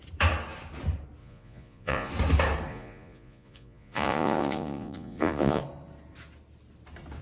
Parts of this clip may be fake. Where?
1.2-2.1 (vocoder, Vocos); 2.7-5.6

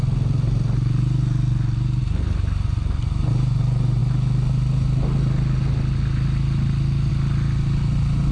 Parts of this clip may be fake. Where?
none

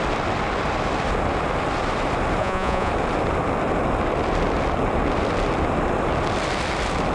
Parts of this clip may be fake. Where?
2.4-2.9 (vocoder, Vocos)

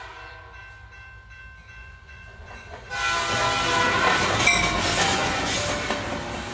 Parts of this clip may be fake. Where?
1.8-2.9 (vocoder, Vocos); 5.1-5.6

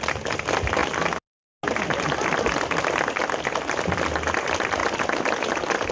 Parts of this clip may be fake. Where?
none

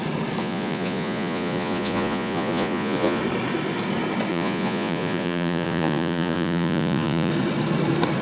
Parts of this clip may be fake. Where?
0.4-3.2 (vocoder, Vocos); 4.3-7.3

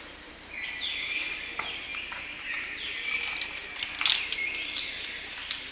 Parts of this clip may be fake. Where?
none

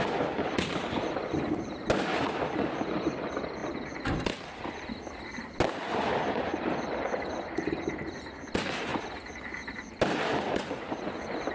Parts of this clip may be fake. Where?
none